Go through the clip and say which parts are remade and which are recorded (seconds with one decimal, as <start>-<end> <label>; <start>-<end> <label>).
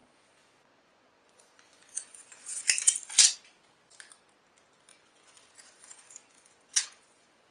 0.0-2.6 remade; 2.6-4.9 recorded; 4.9-7.5 remade